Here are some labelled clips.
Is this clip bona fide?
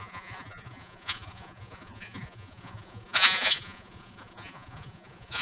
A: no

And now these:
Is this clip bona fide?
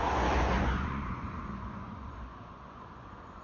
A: no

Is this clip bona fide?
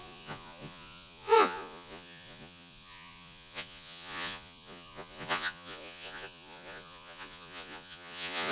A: no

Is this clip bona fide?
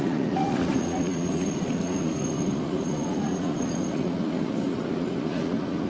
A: no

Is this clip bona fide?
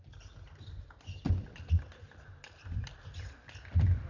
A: yes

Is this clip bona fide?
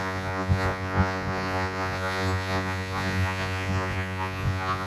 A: no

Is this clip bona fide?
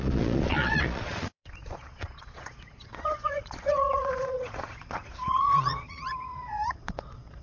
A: no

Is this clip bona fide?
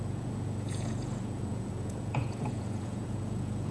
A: no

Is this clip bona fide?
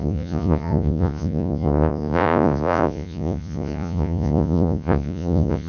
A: no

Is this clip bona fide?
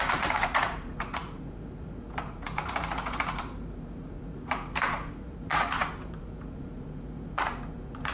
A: no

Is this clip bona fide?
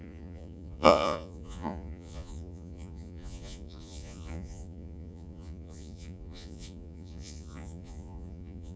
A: no